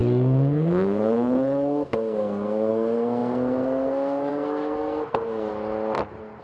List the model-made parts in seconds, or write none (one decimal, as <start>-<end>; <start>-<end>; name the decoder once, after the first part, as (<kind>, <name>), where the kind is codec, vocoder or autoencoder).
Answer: 0.0-5.5 (codec, SNAC)